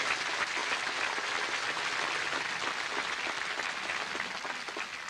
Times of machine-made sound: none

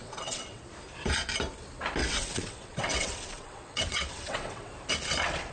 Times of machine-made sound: 0.0-0.6 (vocoder, WaveNeXt); 2.0-4.7

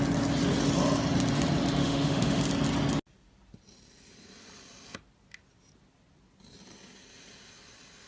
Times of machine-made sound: 1.8-2.4 (autoencoder, DAC-VAE)

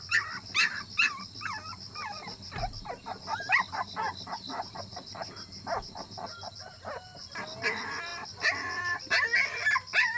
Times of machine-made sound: 2.0-7.3 (vocoder, BigVGAN v2)

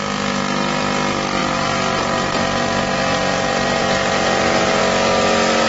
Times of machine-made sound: 1.4-4.8 (vocoder, BigVGAN v2)

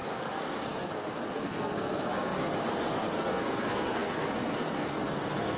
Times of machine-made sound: 0.0-5.6 (codec, SNAC)

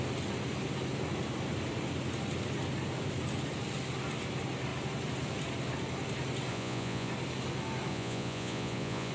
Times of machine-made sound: 6.5-7.1 (vocoder, Vocos); 7.9-9.1